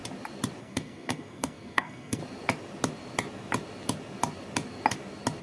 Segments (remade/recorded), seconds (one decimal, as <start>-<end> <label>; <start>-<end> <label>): 0.0-0.6 recorded; 0.6-2.2 remade; 2.2-5.4 recorded